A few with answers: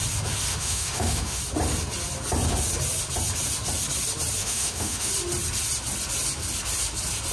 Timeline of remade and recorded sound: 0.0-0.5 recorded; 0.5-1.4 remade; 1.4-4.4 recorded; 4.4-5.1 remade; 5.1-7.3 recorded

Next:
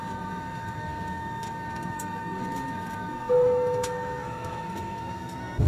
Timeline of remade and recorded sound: 0.0-5.7 remade